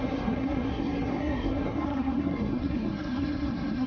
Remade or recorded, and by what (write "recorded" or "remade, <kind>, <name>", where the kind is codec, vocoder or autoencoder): remade, codec, SNAC